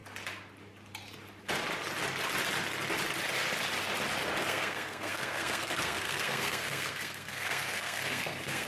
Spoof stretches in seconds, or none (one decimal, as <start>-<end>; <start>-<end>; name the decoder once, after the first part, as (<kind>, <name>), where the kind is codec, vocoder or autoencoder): 4.4-8.7 (codec, SNAC)